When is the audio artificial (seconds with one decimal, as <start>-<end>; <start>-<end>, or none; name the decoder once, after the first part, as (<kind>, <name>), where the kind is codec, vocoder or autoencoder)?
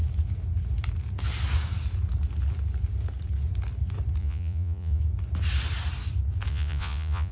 4.2-5.0 (vocoder, Vocos); 6.5-7.3